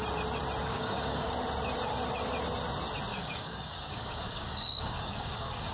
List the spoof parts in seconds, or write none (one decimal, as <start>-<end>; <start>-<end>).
0.7-1.3; 3.1-5.7